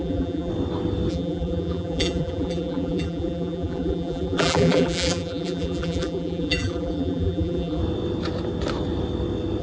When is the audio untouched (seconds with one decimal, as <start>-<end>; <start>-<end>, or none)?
0.5-1.1; 7.8-9.6